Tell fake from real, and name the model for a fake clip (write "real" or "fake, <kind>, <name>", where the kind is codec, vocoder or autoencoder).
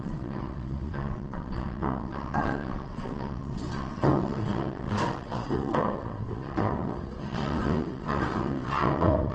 fake, vocoder, WaveNeXt